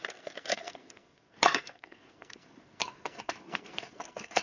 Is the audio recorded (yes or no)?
no